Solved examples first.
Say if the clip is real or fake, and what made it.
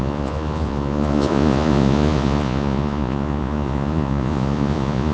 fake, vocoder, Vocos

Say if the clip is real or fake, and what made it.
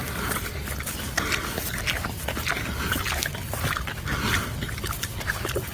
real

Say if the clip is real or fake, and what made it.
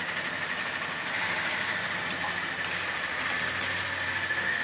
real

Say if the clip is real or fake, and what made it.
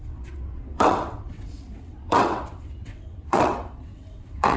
fake, vocoder, WaveNeXt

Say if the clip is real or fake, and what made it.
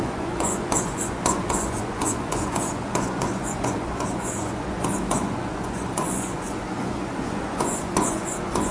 fake, vocoder, Vocos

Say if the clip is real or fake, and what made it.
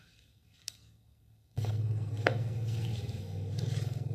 fake, codec, SNAC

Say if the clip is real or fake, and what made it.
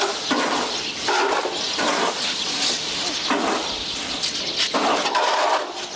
real